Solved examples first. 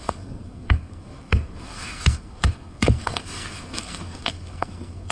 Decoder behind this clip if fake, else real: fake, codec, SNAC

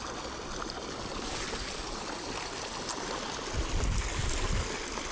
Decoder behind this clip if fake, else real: real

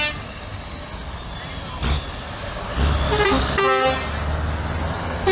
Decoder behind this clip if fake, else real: real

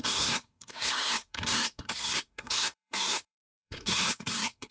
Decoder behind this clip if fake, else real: fake, codec, SNAC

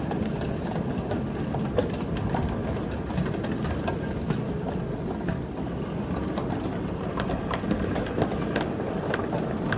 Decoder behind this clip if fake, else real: real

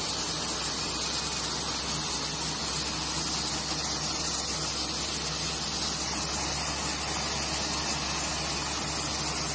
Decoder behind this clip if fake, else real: real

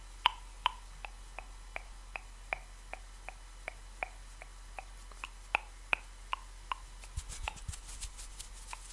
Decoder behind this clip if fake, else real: real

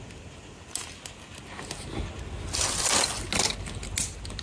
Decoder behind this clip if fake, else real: real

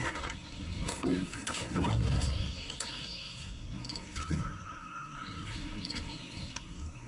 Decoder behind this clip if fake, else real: fake, codec, SNAC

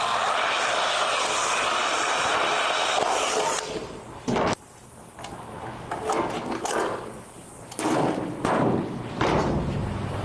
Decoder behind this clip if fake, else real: real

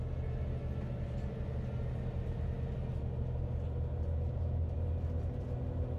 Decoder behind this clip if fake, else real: real